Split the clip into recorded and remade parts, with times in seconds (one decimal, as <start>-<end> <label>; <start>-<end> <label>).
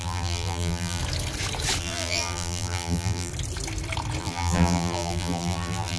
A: 0.0-1.0 remade; 1.0-1.8 recorded; 1.8-3.3 remade; 3.3-4.2 recorded; 4.2-6.0 remade